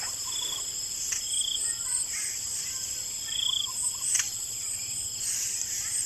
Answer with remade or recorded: remade